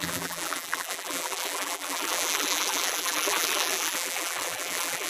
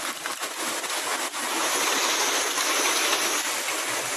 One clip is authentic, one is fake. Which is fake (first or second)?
first